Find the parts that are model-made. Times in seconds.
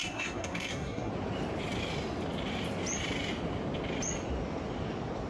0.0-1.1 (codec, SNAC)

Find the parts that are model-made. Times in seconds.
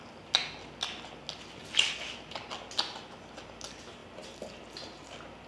none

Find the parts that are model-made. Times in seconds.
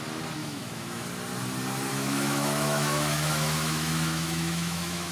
0.4-1.1 (autoencoder, DAC-VAE); 1.9-5.1